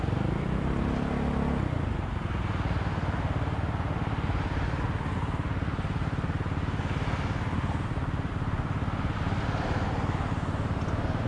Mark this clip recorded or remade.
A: recorded